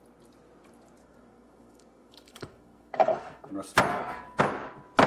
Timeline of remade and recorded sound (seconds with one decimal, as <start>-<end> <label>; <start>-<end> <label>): 0.0-1.0 recorded; 1.0-3.5 remade; 3.5-3.9 recorded; 3.9-4.4 remade; 4.4-5.1 recorded